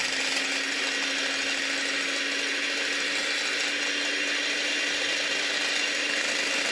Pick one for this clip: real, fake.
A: real